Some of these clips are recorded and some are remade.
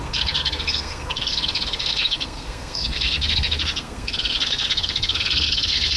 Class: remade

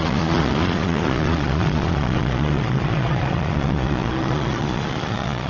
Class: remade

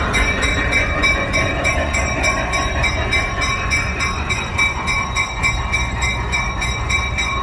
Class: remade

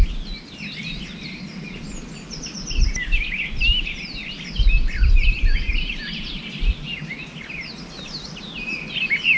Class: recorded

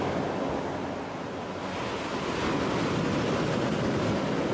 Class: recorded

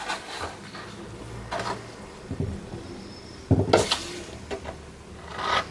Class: recorded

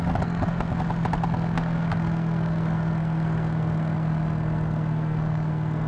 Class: remade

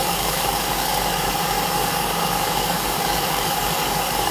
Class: remade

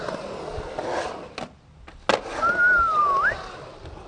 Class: recorded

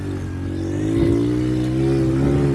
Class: recorded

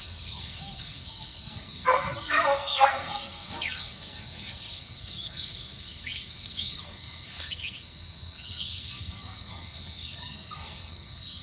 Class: remade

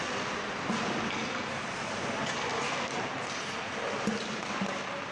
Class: recorded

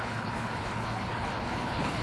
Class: remade